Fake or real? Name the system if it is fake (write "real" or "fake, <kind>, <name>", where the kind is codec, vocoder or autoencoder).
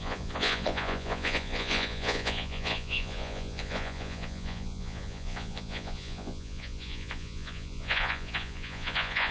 fake, vocoder, Vocos